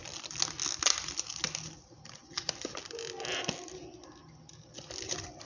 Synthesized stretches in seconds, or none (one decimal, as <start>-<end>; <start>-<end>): none